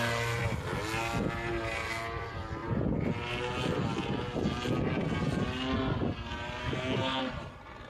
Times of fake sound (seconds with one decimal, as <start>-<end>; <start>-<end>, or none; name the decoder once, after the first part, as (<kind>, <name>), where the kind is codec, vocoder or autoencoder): 6.6-7.2 (codec, SNAC)